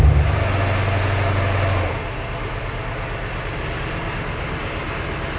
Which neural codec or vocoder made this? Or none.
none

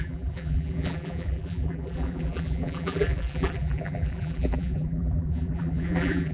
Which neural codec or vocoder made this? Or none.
vocoder, BigVGAN v2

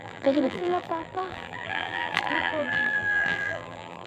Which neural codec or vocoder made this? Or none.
vocoder, BigVGAN v2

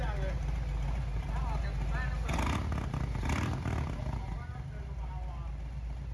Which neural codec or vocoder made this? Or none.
none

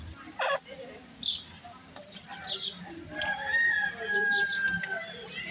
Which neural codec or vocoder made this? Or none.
none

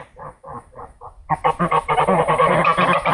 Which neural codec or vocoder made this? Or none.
none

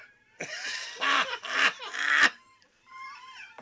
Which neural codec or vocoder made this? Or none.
vocoder, BigVGAN v2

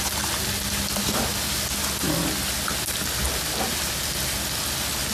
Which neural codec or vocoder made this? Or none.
none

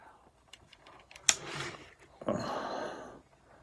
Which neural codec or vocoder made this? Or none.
vocoder, BigVGAN v2